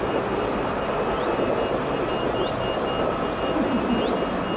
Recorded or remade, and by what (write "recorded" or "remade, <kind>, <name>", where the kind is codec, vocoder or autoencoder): recorded